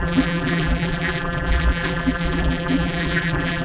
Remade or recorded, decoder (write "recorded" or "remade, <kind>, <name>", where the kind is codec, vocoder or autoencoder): remade, vocoder, BigVGAN v2